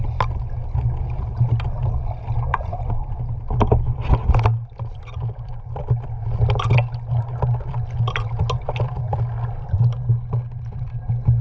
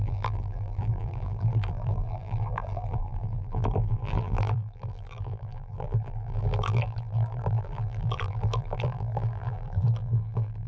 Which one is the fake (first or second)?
second